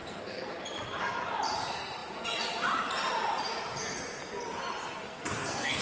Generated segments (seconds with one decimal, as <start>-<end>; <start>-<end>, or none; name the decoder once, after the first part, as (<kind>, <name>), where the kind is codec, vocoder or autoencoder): 0.0-0.5 (codec, SNAC); 5.0-5.8

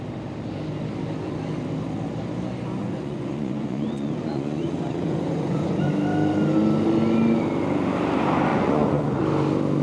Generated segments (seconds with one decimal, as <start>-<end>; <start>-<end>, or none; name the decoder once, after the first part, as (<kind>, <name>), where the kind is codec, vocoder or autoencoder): 2.8-5.9 (vocoder, Vocos); 8.5-9.2

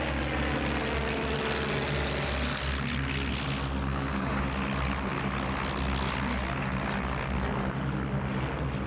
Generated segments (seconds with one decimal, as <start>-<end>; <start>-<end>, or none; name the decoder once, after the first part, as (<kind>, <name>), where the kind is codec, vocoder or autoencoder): 3.9-4.4 (codec, DAC)

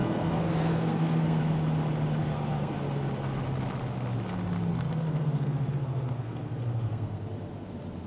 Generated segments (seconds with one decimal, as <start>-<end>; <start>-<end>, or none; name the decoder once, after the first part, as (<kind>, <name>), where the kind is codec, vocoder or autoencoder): 0.0-1.4 (codec, SNAC); 2.2-2.7; 4.7-7.3

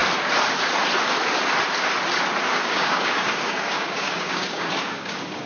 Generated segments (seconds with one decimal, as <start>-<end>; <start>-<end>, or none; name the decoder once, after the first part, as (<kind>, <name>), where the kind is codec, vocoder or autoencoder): 2.5-5.5 (codec, DAC)

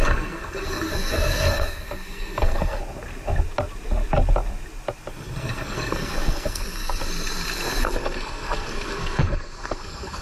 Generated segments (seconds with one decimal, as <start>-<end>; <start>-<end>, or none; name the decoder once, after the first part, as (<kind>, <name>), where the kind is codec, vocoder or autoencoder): 0.0-2.8 (codec, SNAC); 5.1-7.0; 7.8-10.2

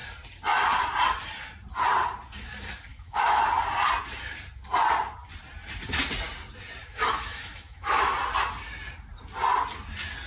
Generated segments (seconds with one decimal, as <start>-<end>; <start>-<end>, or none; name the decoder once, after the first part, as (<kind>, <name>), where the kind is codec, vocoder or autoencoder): 2.9-3.4 (autoencoder, DAC-VAE); 6.8-8.1